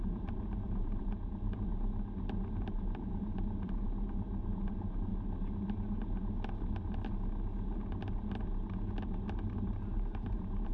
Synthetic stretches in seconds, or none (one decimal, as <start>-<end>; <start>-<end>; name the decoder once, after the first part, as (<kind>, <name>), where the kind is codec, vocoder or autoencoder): 0.0-1.7 (vocoder, BigVGAN v2); 2.6-5.1; 9.5-10.7